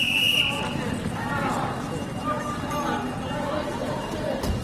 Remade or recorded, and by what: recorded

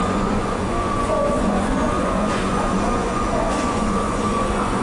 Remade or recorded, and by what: remade, vocoder, Vocos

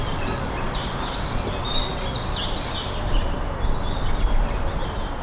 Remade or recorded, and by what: recorded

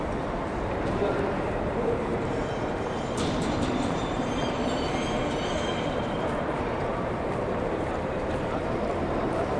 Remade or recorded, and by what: remade, vocoder, BigVGAN v2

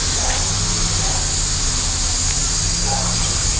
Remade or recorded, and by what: recorded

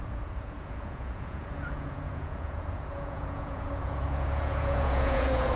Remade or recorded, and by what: remade, vocoder, Vocos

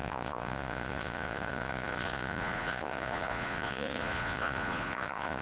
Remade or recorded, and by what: remade, vocoder, Vocos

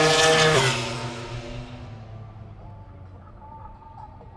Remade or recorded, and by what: recorded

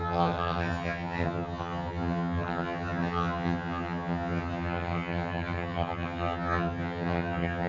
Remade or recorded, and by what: remade, vocoder, HiFi-GAN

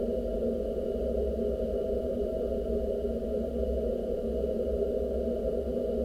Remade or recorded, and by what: recorded